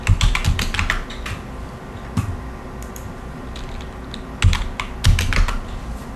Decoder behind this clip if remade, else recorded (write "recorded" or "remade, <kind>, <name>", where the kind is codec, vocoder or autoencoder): recorded